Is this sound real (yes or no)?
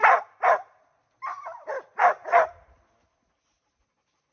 yes